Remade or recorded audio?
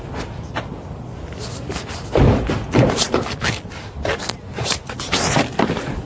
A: recorded